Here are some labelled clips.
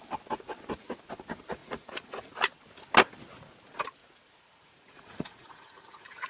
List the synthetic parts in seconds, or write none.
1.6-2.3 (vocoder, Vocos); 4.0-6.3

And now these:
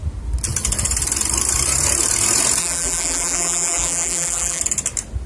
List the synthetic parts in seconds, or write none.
2.6-4.6 (vocoder, BigVGAN v2)

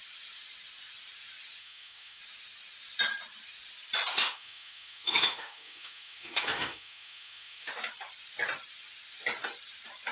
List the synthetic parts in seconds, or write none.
1.6-2.2 (autoencoder, DAC-VAE); 4.1-7.7

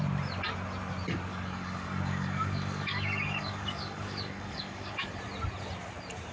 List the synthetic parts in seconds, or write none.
1.3-5.1 (codec, DAC)

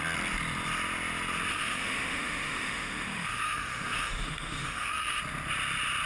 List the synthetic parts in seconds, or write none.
1.5-5.2 (autoencoder, DAC-VAE)

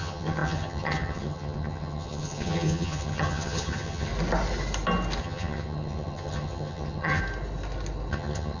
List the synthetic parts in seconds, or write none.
0.0-4.1 (vocoder, HiFi-GAN); 5.2-7.2; 8.1-8.6

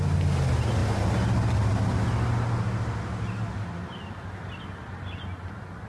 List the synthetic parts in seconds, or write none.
none

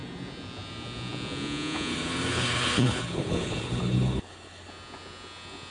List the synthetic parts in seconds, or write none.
1.9-4.7 (codec, HILCodec)